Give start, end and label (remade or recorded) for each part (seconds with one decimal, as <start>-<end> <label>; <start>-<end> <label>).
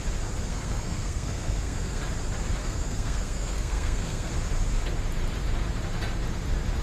0.0-0.5 recorded; 0.5-2.0 remade; 2.0-2.6 recorded; 2.6-4.3 remade; 4.3-6.8 recorded